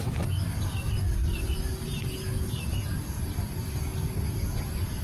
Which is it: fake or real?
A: real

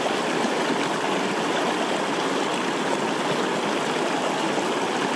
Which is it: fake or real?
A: real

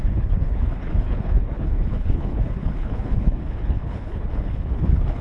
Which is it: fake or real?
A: fake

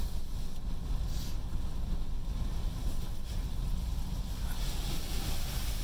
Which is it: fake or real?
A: real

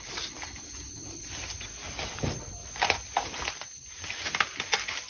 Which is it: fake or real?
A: real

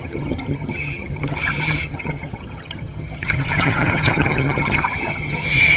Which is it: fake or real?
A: fake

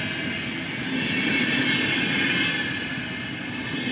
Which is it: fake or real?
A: real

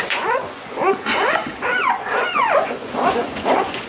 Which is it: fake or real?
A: fake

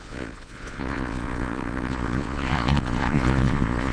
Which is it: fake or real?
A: fake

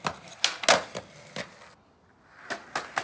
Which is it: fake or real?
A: real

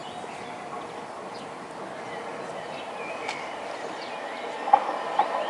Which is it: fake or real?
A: real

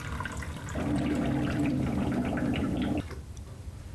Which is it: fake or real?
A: fake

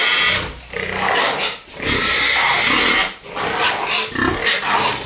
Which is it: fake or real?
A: real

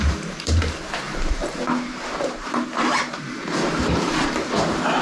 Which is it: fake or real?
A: fake